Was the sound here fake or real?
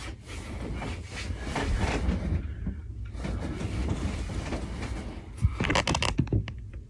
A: real